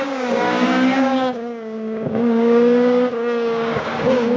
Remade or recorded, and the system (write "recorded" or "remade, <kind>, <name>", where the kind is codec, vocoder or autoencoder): remade, codec, DAC